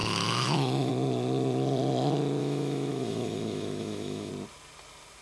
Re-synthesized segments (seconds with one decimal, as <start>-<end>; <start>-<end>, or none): 0.0-0.9; 2.4-4.3